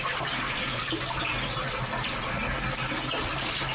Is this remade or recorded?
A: recorded